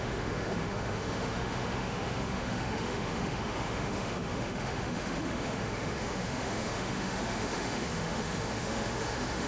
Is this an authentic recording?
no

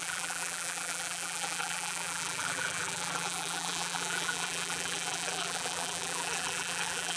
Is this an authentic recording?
no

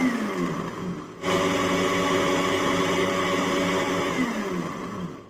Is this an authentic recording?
yes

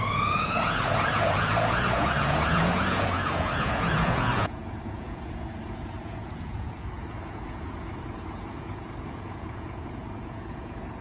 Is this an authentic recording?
no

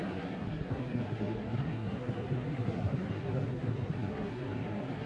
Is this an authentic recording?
no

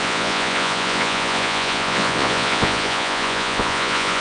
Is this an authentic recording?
no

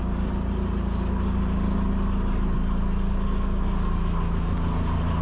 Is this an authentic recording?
yes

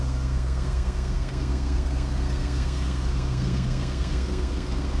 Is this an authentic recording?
no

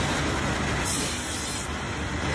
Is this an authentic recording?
yes